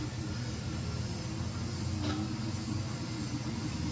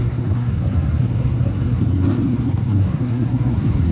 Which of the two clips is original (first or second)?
first